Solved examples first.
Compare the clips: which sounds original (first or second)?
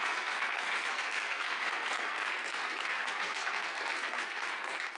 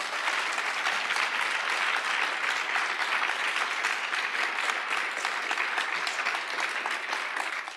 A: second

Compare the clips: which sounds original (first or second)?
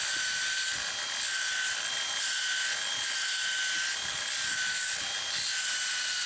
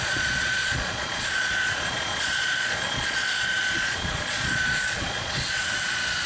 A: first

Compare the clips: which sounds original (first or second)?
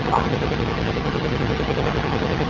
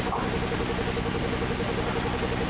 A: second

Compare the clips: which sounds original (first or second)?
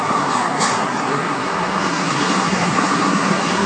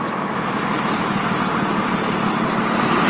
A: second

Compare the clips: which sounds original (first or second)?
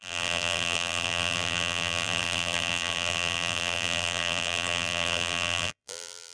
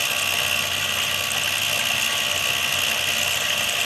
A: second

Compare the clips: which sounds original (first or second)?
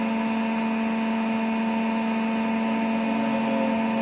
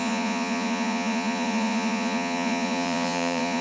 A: first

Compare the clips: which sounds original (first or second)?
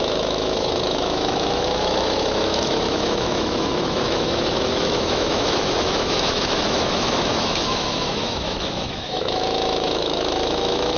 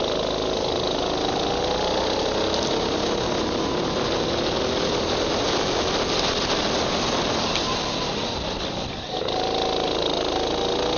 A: second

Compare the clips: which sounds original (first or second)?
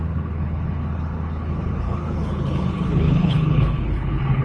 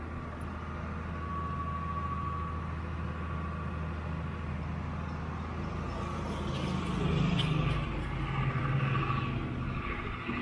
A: second